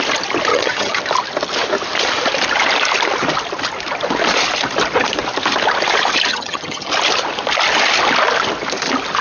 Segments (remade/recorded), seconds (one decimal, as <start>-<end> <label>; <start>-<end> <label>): 0.0-0.5 recorded; 0.5-1.0 remade; 1.0-6.3 recorded; 6.3-6.9 remade; 6.9-9.2 recorded